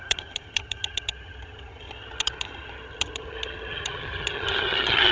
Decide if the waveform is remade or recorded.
remade